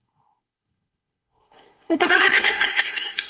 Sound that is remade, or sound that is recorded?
remade